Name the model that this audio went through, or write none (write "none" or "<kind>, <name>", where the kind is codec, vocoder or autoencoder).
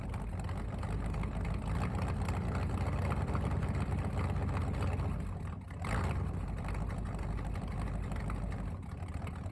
none